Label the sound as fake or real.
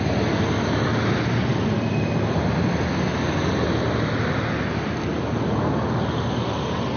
real